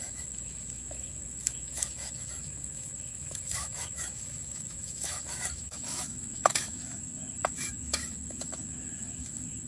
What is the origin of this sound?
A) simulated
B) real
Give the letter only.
A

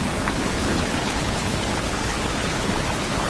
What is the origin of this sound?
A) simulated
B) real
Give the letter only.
A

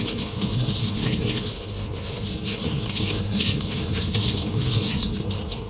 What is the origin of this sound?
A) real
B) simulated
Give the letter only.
B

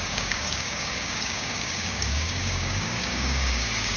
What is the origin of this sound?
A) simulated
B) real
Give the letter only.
A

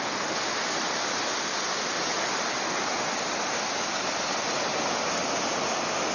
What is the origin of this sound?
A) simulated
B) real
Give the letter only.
B